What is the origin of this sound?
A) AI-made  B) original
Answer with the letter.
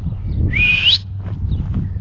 B